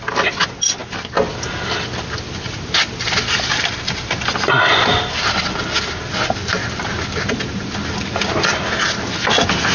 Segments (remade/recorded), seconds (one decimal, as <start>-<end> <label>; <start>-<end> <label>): 0.0-9.7 recorded